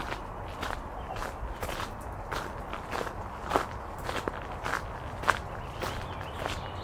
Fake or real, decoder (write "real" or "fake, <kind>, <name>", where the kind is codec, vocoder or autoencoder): real